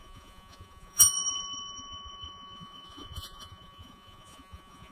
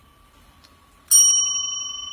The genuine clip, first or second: second